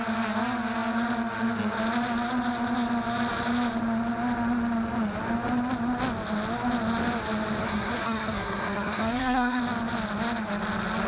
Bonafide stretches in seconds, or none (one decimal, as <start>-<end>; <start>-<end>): 0.0-7.6; 9.6-11.1